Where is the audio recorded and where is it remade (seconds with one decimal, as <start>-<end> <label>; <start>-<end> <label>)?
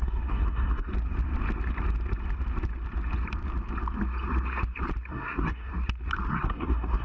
0.0-0.9 remade; 0.9-5.1 recorded; 5.1-5.7 remade; 5.7-6.3 recorded; 6.3-7.0 remade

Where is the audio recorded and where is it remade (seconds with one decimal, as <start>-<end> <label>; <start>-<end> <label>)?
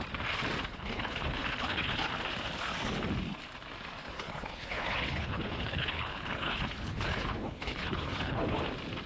0.0-0.7 recorded; 0.7-2.1 remade; 2.1-4.0 recorded; 4.0-8.6 remade; 8.6-9.1 recorded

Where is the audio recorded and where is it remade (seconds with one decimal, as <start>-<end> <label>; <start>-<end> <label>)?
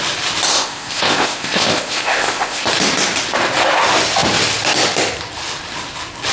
0.0-0.5 recorded; 0.5-2.7 remade; 2.7-6.3 recorded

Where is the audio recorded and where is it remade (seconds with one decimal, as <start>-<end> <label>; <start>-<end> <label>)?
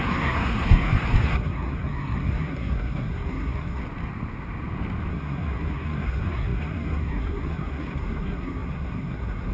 0.0-3.8 remade; 3.8-5.1 recorded; 5.1-9.5 remade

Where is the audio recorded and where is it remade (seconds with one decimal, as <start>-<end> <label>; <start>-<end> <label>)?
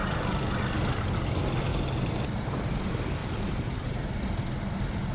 0.0-1.7 recorded; 1.7-2.7 remade; 2.7-3.2 recorded; 3.2-4.1 remade; 4.1-5.1 recorded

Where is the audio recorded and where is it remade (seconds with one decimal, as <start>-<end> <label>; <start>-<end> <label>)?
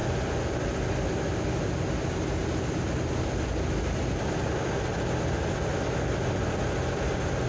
0.0-5.7 recorded; 5.7-6.6 remade; 6.6-7.5 recorded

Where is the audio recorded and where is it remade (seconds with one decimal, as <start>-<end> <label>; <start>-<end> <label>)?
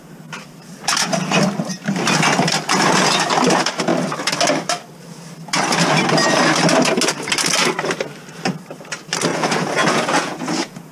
0.0-9.3 recorded; 9.3-10.9 remade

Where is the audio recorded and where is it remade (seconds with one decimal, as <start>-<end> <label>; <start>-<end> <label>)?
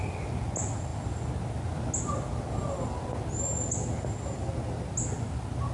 0.0-5.7 recorded